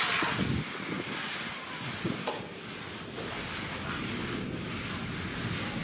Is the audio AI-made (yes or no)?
no